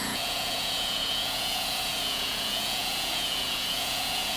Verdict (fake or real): fake